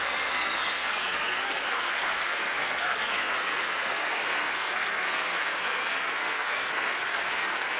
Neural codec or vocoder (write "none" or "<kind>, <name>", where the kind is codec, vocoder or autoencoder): codec, SNAC